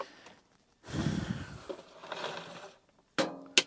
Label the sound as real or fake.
real